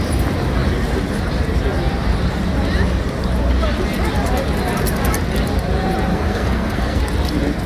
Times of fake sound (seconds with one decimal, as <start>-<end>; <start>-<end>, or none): 6.1-7.0